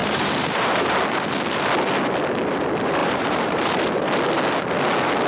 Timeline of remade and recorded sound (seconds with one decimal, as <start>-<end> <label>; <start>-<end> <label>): 0.0-0.9 remade; 0.9-3.0 recorded; 3.0-3.8 remade; 3.8-5.3 recorded